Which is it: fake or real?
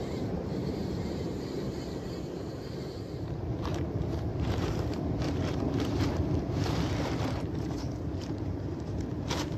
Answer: fake